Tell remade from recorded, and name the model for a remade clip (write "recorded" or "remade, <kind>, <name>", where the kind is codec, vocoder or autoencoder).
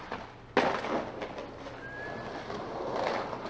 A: recorded